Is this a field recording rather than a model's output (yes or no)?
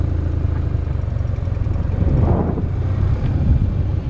yes